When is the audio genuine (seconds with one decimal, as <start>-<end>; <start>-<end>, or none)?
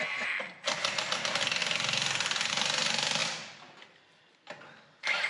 0.0-3.2; 4.3-5.3